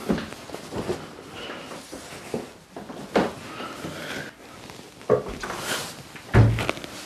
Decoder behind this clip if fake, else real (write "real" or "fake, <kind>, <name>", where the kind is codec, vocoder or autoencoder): real